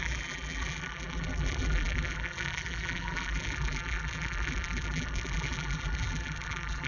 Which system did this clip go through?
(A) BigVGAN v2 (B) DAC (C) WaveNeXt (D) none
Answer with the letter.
A